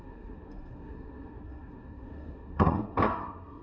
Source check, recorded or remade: remade